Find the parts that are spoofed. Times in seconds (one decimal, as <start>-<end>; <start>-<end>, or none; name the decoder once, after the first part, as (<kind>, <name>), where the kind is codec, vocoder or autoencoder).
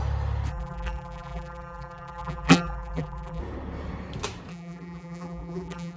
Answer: 0.5-3.4 (vocoder, BigVGAN v2); 4.5-6.0